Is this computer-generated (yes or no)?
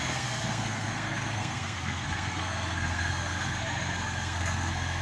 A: yes